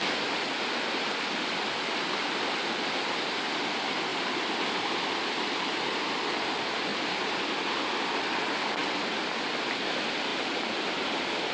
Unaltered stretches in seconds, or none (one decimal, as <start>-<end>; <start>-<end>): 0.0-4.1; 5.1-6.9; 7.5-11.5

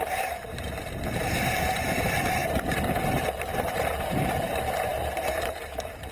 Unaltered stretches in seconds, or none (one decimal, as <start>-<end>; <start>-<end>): none

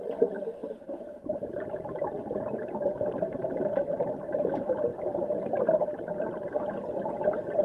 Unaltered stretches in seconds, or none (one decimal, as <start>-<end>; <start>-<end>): 0.0-0.6; 4.5-7.6

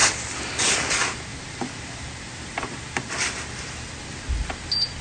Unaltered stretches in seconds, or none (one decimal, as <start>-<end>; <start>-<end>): 0.7-1.3; 4.2-5.0

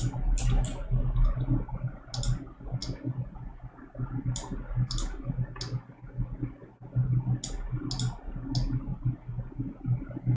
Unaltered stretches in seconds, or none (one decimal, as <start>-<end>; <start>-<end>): 0.0-10.4

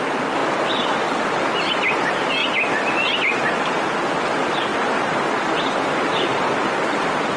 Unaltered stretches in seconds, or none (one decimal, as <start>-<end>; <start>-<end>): 0.4-1.3; 2.4-3.2; 4.7-5.9

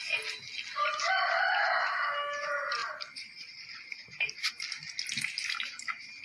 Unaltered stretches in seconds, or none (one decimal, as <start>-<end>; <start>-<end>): 0.0-2.8; 4.5-6.2